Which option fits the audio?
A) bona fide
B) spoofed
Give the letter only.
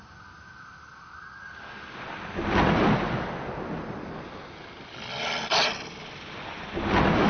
A